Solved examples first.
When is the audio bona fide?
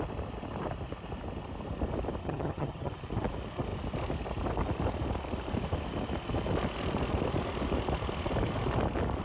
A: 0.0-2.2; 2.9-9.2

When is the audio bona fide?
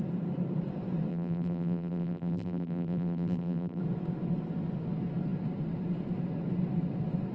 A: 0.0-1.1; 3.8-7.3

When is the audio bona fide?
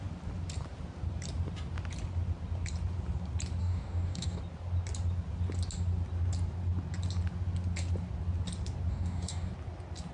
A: 0.0-3.6; 4.4-8.9; 9.5-10.1